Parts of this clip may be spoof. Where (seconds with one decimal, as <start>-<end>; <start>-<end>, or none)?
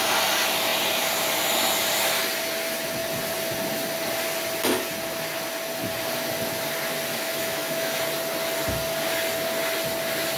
7.1-8.0